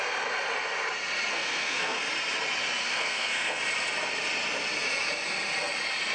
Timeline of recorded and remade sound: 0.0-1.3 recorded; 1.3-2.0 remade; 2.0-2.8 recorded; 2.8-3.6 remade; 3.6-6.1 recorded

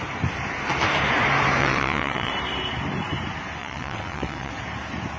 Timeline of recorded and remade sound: 0.0-1.6 recorded; 1.6-2.3 remade; 2.3-3.6 recorded; 3.6-4.5 remade; 4.5-5.2 recorded

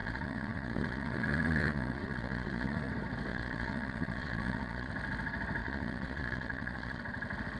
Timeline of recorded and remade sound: 0.0-2.9 remade; 2.9-3.3 recorded; 3.3-4.9 remade; 4.9-5.6 recorded; 5.6-7.0 remade; 7.0-7.6 recorded